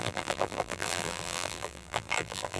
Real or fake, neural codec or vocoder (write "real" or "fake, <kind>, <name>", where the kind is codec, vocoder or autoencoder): fake, vocoder, BigVGAN v2